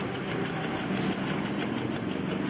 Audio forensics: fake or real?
real